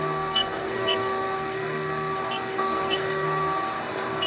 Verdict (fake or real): fake